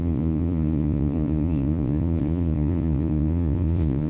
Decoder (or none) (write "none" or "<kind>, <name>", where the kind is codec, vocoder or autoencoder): vocoder, Vocos